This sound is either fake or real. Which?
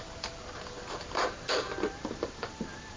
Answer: real